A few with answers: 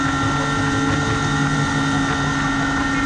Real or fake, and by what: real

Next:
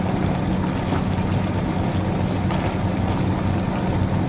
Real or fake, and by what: real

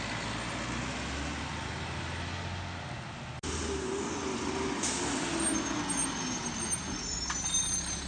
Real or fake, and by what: real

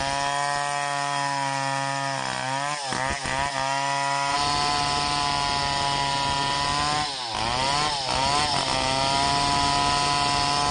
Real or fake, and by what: real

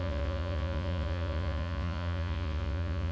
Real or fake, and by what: fake, vocoder, Vocos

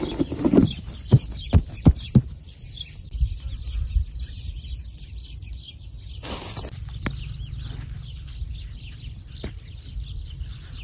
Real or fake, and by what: real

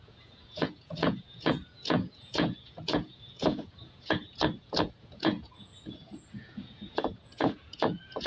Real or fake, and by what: fake, vocoder, Vocos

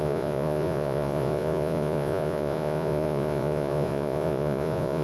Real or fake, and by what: fake, vocoder, Vocos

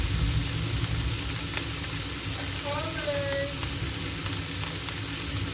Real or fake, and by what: real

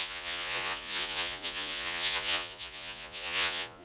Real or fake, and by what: fake, vocoder, Vocos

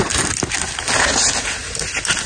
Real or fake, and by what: real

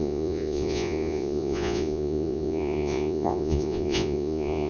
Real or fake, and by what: fake, vocoder, Vocos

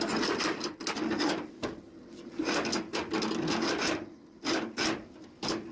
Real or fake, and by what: real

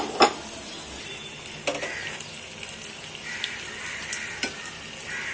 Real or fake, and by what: real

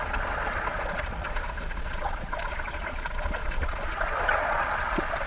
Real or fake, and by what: fake, vocoder, Vocos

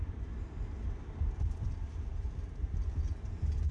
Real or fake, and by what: real